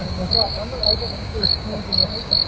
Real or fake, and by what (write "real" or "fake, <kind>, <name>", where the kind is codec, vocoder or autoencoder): fake, codec, DAC